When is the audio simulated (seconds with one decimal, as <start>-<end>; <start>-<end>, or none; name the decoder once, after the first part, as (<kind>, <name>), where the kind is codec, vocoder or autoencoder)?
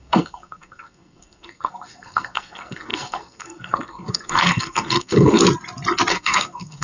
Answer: 0.0-5.4 (codec, SNAC); 6.1-6.8